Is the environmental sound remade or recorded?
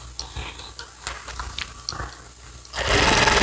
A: recorded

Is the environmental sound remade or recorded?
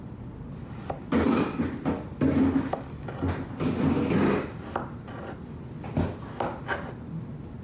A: recorded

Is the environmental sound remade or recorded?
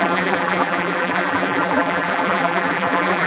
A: remade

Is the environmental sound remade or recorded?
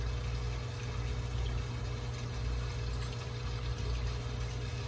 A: recorded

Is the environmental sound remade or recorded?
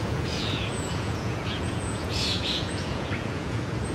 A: remade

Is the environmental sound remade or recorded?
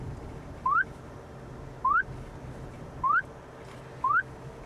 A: recorded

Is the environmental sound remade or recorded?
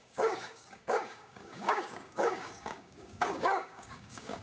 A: remade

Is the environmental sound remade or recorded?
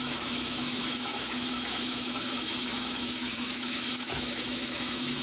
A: remade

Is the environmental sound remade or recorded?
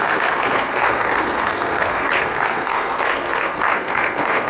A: remade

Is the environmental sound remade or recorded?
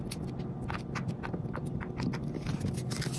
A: recorded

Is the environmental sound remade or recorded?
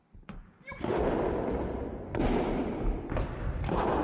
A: recorded